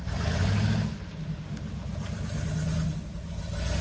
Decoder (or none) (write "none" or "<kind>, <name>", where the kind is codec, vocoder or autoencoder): none